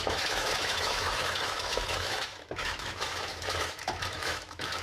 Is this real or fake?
fake